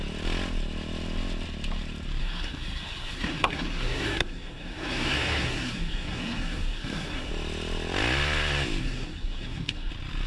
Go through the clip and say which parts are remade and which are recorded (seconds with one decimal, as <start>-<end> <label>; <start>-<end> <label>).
0.0-2.2 recorded; 2.2-7.3 remade; 7.3-8.8 recorded; 8.8-9.9 remade; 9.9-10.3 recorded